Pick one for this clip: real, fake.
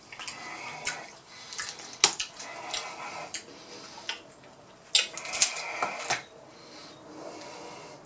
real